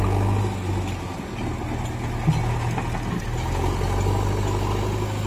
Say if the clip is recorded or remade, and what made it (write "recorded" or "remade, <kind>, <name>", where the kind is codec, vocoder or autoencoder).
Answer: recorded